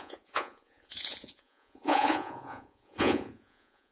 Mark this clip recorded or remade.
remade